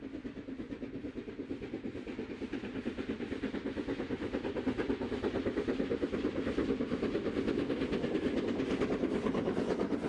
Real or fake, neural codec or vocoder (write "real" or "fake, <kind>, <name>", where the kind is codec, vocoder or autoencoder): real